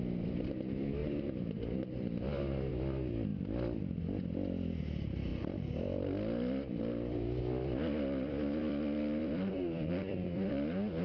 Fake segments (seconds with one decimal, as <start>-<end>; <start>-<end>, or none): 1.0-2.7; 3.3-4.0; 5.3-10.5